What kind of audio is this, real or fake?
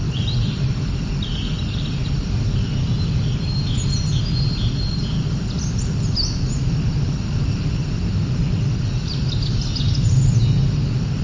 real